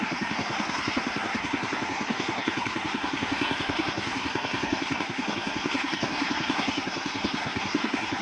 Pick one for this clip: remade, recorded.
remade